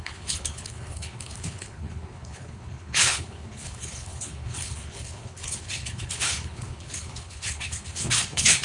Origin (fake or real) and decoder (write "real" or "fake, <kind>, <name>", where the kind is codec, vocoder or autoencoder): fake, codec, HILCodec